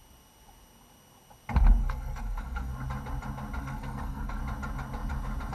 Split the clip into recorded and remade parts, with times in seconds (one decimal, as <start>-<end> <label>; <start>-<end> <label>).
0.0-1.8 recorded; 1.8-2.7 remade; 2.7-3.6 recorded; 3.6-4.4 remade; 4.4-5.5 recorded